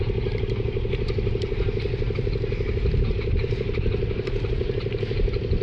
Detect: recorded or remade remade